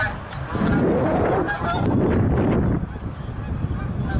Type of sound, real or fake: real